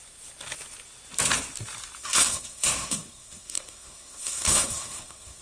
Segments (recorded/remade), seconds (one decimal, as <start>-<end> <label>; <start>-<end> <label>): 0.0-2.0 recorded; 2.0-5.4 remade